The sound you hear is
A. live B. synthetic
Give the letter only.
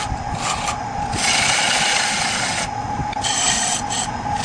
A